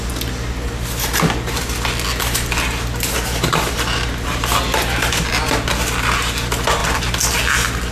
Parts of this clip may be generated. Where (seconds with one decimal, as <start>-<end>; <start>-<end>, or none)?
none